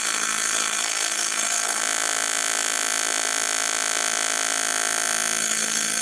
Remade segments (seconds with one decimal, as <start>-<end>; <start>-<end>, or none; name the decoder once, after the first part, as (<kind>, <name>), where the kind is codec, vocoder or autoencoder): 0.0-1.8 (codec, SNAC); 5.4-6.0